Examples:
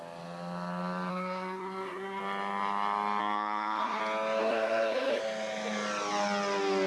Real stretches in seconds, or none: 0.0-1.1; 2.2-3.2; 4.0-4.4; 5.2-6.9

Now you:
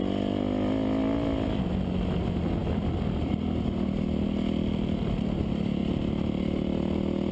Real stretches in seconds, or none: 0.0-7.3